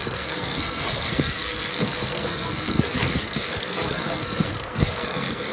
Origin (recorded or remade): remade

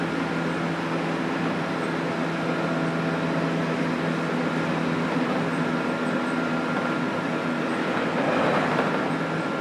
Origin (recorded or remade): recorded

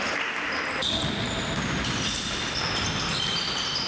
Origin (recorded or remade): recorded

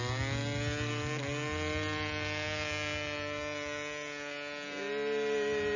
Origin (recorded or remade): recorded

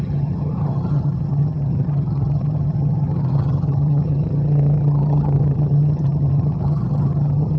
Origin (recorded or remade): remade